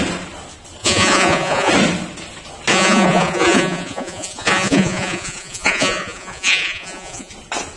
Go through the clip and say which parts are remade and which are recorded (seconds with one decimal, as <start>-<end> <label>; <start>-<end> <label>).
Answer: 0.0-0.8 recorded; 0.8-1.7 remade; 1.7-2.7 recorded; 2.7-7.3 remade; 7.3-7.8 recorded